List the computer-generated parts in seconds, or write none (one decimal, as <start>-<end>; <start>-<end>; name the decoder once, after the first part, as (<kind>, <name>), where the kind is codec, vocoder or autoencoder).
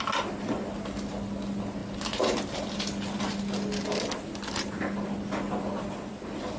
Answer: none